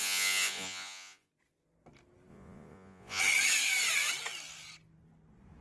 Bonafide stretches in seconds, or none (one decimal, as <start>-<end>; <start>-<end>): 1.3-2.3; 3.2-5.6